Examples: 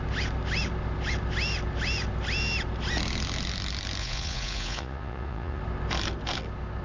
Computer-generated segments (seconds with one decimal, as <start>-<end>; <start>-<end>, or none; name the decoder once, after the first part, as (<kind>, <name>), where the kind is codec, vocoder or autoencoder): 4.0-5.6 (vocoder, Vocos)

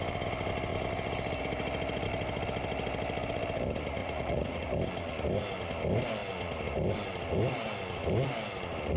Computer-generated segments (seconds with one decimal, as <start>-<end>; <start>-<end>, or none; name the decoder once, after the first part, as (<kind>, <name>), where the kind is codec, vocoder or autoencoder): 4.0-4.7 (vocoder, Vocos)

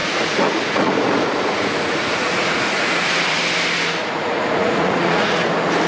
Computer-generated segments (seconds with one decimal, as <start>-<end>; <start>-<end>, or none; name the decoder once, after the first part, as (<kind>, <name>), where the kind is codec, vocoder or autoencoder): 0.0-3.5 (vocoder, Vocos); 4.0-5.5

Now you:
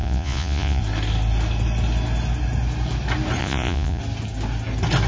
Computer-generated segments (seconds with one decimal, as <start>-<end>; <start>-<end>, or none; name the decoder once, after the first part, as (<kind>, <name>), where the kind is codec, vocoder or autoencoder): 0.0-0.8 (vocoder, Vocos); 3.4-4.0

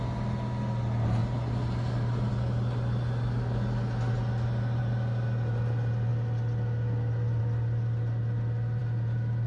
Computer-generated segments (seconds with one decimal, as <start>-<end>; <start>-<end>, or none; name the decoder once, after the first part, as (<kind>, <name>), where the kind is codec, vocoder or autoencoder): none